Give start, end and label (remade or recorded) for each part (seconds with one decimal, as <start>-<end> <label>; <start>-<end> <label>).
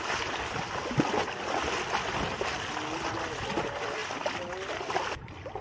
0.0-5.6 recorded